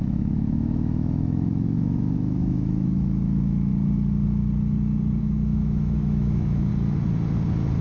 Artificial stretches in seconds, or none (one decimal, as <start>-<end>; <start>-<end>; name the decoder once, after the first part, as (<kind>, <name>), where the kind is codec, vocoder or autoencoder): 0.0-3.7 (autoencoder, DAC-VAE); 5.2-6.7